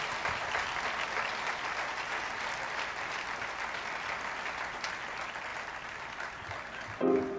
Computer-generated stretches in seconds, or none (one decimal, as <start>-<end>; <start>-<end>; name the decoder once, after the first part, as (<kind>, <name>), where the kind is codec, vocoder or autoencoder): none